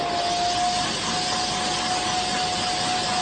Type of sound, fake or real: real